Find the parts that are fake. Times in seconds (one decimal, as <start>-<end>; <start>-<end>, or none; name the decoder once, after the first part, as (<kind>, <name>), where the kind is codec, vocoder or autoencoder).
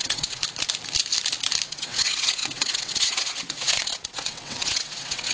0.0-0.4 (vocoder, WaveNeXt); 1.7-5.3